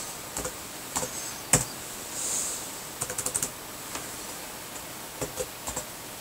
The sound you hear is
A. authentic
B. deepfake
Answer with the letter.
A